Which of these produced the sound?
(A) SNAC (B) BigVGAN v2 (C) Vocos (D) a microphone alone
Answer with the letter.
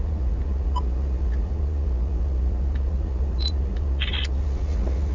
C